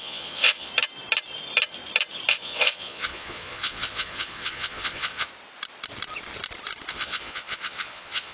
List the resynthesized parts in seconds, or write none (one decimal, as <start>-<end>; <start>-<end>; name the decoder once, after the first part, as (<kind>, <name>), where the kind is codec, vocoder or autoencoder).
0.0-0.7 (vocoder, Vocos); 2.3-5.3; 6.9-8.3